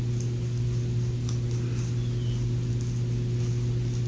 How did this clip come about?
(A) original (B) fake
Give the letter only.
A